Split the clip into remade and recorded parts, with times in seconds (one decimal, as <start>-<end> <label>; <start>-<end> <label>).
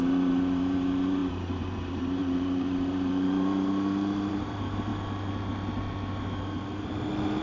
0.0-4.9 remade; 4.9-7.4 recorded